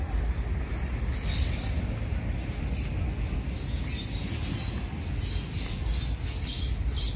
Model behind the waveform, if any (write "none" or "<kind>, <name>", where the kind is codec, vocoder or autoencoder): none